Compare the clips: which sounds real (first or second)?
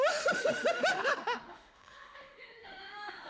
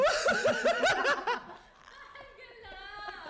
second